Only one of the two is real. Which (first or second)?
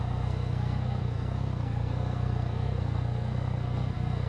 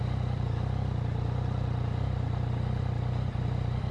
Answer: second